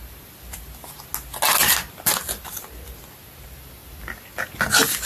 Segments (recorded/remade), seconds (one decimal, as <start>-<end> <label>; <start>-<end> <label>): 0.0-5.1 recorded